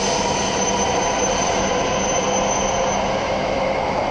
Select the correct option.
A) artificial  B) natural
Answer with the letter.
B